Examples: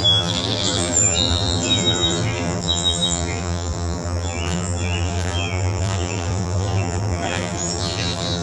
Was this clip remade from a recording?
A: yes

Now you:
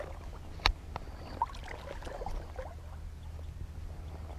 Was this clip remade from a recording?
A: no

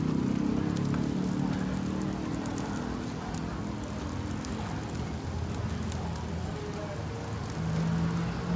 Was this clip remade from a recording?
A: no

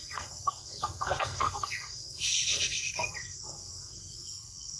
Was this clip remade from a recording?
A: yes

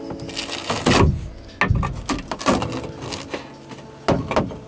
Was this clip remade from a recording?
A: no